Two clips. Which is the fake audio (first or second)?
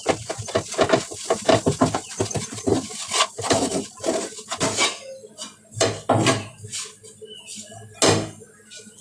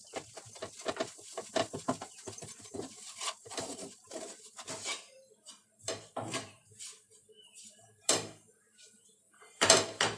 second